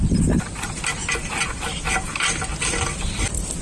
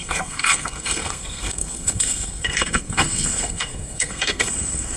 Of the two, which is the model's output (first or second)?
second